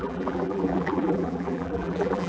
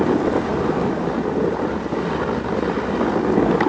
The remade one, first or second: first